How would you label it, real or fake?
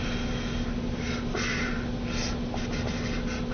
real